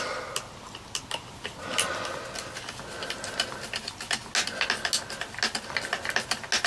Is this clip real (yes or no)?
yes